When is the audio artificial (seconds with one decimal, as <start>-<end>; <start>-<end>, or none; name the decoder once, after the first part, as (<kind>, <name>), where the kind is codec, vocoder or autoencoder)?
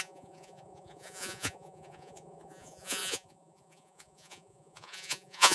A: 0.0-5.5 (vocoder, Vocos)